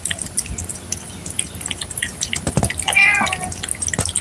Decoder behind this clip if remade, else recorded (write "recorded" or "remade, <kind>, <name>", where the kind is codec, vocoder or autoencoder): recorded